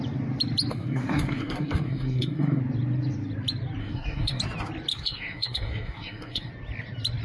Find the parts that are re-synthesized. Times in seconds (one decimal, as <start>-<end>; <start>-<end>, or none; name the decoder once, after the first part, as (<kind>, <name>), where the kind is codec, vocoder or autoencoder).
0.7-2.6 (codec, SNAC); 3.8-4.4; 4.9-6.5